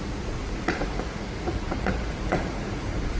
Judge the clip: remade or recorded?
remade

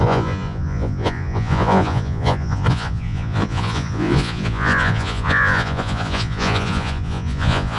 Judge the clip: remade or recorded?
remade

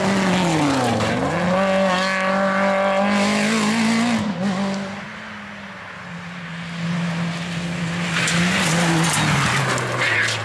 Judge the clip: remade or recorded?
recorded